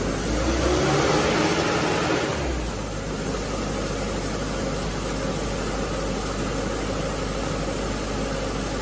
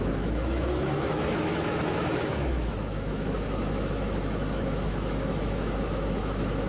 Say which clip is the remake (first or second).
second